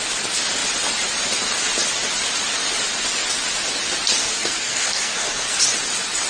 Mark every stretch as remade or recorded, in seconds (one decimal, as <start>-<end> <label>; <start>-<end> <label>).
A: 0.0-4.2 recorded; 4.2-5.6 remade; 5.6-6.3 recorded